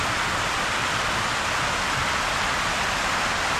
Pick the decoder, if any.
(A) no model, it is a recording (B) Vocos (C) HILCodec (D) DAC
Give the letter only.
A